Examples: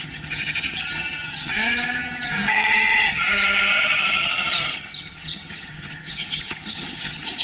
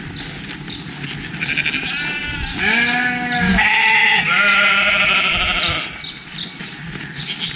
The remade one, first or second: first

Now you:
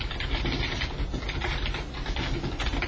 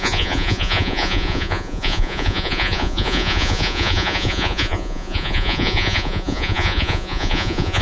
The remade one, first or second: second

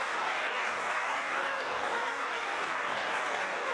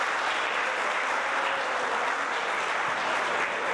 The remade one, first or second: first